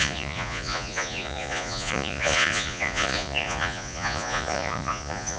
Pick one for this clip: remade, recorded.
remade